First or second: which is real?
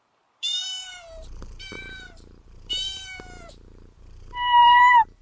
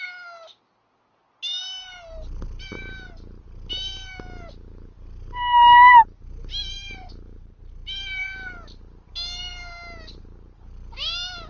second